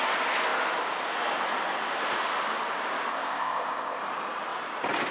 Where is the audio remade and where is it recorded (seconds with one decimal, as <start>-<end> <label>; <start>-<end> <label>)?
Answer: 0.0-3.1 recorded; 3.1-4.0 remade; 4.0-5.1 recorded